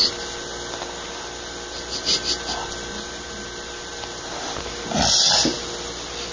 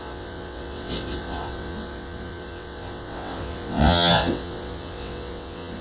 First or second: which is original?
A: first